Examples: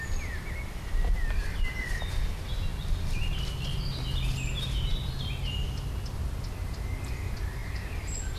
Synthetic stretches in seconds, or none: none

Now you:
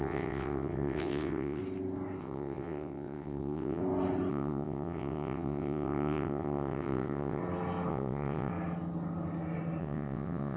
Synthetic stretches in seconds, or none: 0.0-1.6 (vocoder, WaveNeXt); 2.2-3.8; 4.3-7.4; 7.9-8.5; 9.8-10.6

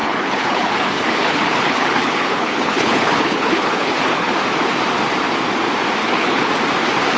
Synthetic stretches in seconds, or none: 0.0-4.3 (codec, HILCodec); 6.0-6.5

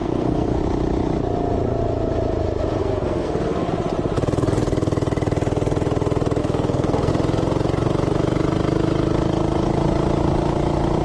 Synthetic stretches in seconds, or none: 0.0-0.6 (codec, SNAC); 2.8-3.7; 6.4-7.1

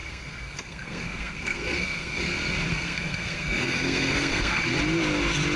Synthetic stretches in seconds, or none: 0.0-2.2 (codec, SNAC); 2.7-4.6